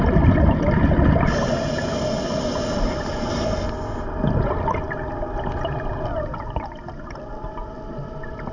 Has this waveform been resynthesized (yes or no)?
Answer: no